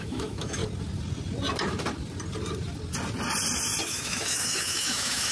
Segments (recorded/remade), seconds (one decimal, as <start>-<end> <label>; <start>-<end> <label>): 0.0-0.6 remade; 0.6-3.8 recorded; 3.8-5.3 remade